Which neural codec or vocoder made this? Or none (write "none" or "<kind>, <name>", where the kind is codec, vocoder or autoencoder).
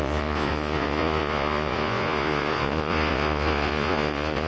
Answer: vocoder, Vocos